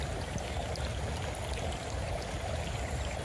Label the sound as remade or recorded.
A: recorded